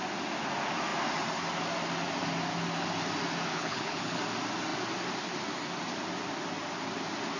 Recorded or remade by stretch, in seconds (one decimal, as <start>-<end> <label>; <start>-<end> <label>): 0.0-3.5 recorded; 3.5-4.2 remade; 4.2-7.4 recorded